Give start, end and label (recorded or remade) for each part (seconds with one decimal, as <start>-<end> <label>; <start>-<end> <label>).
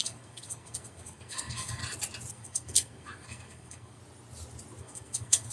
0.0-1.8 remade; 1.8-2.3 recorded; 2.3-4.0 remade; 4.0-4.8 recorded; 4.8-5.5 remade